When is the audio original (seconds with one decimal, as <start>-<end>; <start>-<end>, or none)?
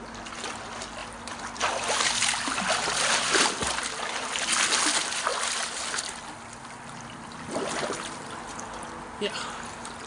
0.0-10.1